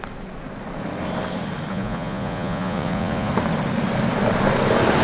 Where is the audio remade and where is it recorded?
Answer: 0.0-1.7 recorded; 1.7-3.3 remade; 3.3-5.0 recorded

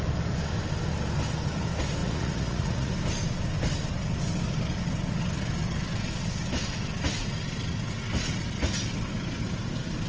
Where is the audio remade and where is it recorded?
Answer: 0.0-2.0 recorded; 2.0-2.9 remade; 2.9-10.1 recorded

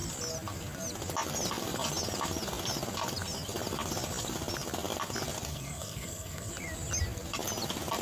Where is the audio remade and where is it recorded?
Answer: 0.0-5.5 recorded; 5.5-6.5 remade; 6.5-8.0 recorded

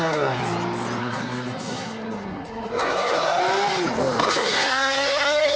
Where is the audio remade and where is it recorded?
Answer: 0.0-0.4 remade; 0.4-1.0 recorded; 1.0-3.4 remade; 3.4-4.2 recorded; 4.2-5.6 remade

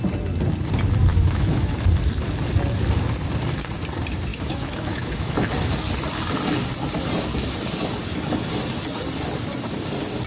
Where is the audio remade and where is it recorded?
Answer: 0.0-1.1 recorded; 1.1-1.7 remade; 1.7-4.3 recorded; 4.3-5.5 remade; 5.5-10.3 recorded

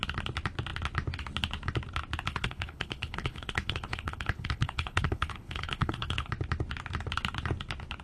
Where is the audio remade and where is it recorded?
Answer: 0.0-2.3 recorded; 2.3-6.3 remade; 6.3-8.0 recorded

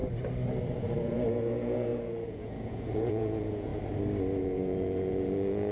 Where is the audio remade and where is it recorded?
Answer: 0.0-1.0 recorded; 1.0-3.7 remade; 3.7-4.4 recorded; 4.4-5.7 remade